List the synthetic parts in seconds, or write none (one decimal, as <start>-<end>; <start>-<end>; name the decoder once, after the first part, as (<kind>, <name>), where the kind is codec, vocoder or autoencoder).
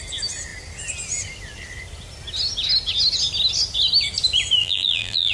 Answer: 4.6-5.3 (vocoder, BigVGAN v2)